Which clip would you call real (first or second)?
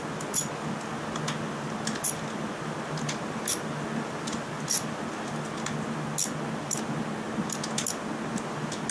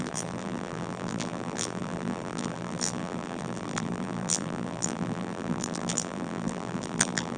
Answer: first